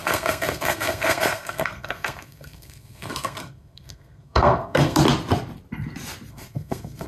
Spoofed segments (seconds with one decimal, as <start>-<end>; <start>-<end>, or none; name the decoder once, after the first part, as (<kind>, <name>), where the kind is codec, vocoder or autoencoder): 0.0-5.0 (codec, SNAC); 6.3-7.1